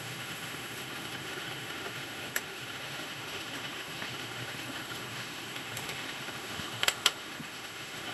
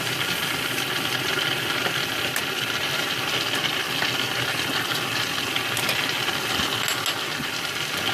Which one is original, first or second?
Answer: second